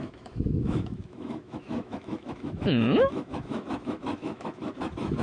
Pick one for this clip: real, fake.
fake